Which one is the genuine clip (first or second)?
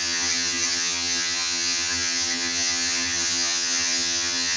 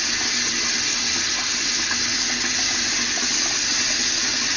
second